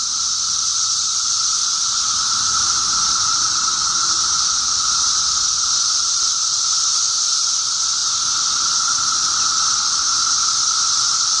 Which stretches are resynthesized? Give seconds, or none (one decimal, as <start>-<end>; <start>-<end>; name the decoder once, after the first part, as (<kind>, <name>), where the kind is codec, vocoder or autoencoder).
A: 0.7-5.2 (vocoder, BigVGAN v2)